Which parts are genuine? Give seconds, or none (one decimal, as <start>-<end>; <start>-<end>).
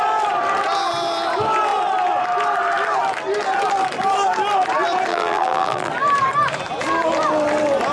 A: 0.0-5.1; 5.9-7.9